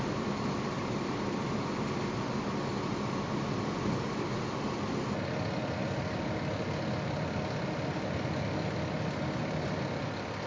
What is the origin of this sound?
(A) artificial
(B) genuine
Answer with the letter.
B